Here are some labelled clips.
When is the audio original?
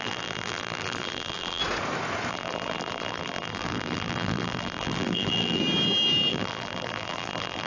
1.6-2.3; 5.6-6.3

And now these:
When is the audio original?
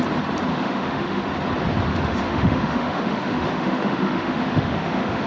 0.0-0.5; 1.2-1.9